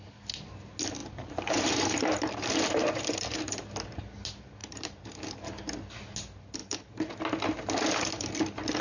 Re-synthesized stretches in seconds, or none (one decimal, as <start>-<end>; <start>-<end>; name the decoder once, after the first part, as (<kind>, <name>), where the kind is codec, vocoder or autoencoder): 1.0-4.0 (vocoder, BigVGAN v2); 4.6-5.3; 6.6-7.1